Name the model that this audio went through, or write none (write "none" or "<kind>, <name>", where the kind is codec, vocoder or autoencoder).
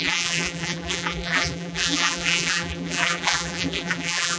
vocoder, BigVGAN v2